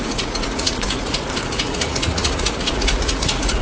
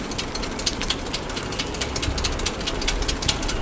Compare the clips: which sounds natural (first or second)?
second